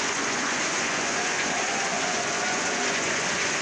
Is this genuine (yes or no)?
no